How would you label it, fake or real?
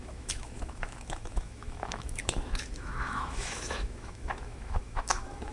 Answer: fake